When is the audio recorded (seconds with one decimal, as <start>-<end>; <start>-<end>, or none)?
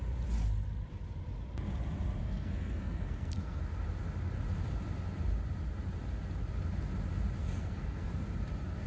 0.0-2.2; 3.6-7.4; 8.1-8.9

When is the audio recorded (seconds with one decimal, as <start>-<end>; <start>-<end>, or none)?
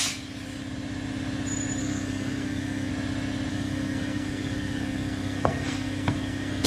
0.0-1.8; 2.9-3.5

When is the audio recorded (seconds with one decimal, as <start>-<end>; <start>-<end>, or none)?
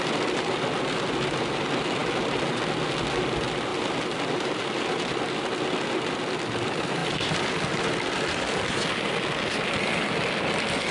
0.0-10.9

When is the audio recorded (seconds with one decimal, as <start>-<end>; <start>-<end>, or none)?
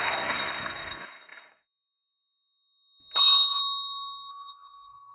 3.6-4.3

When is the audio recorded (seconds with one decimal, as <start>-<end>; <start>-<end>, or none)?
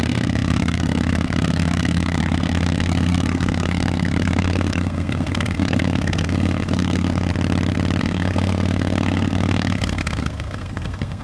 7.3-8.0